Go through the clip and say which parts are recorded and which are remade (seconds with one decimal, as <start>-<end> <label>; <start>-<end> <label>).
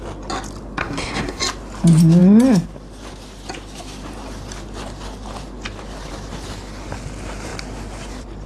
0.0-0.8 recorded; 0.8-1.4 remade; 1.4-8.5 recorded